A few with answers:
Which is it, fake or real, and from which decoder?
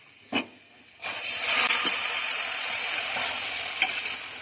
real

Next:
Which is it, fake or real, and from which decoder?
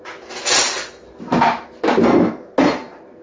real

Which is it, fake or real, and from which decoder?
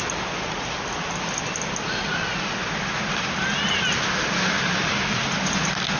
real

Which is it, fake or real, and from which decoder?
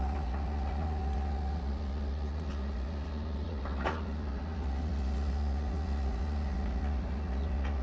fake, vocoder, Vocos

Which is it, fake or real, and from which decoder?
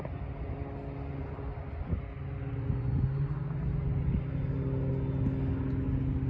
real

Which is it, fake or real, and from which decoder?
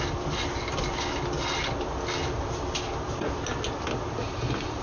real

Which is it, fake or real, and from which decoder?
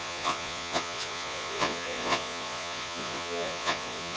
fake, vocoder, Vocos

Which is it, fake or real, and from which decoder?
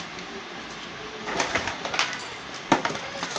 real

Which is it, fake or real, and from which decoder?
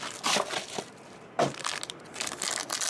real